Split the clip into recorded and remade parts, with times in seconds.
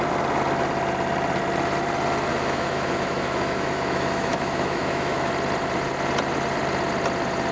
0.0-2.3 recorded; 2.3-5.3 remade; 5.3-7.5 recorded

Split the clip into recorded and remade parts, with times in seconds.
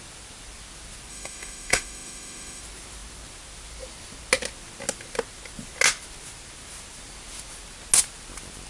0.0-1.1 recorded; 1.1-2.6 remade; 2.6-8.7 recorded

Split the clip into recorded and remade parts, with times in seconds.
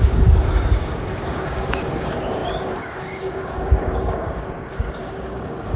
0.0-5.8 remade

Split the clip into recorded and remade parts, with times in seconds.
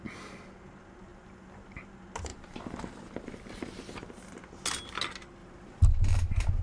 0.0-1.1 recorded; 1.1-1.9 remade; 1.9-2.3 recorded; 2.3-4.4 remade; 4.4-5.4 recorded; 5.4-6.6 remade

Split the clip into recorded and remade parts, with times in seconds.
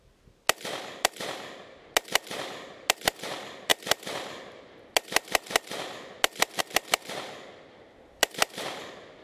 0.0-9.2 recorded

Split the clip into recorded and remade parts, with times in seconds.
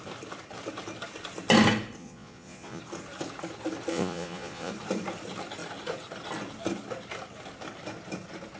0.0-2.0 recorded; 2.0-2.8 remade; 2.8-3.9 recorded; 3.9-4.7 remade; 4.7-8.6 recorded